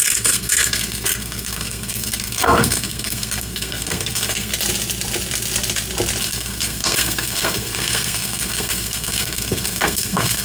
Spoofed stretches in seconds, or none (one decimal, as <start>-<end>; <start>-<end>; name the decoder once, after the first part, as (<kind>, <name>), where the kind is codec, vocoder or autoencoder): 0.0-4.5 (codec, SNAC); 6.2-10.4